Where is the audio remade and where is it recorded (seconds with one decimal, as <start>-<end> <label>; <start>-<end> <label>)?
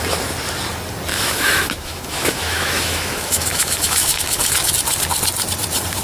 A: 0.0-1.1 recorded; 1.1-4.7 remade; 4.7-6.0 recorded